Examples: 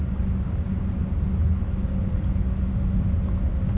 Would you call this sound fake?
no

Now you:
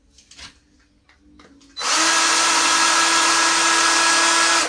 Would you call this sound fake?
no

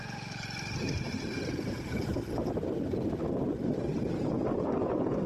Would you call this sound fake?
no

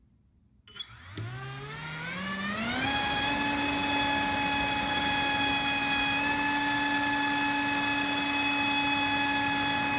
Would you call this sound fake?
no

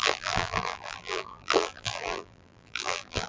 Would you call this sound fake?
yes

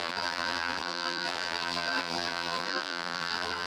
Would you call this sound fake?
yes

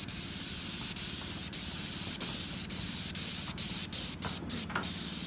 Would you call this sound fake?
no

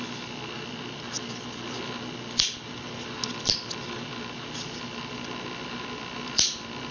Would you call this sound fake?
no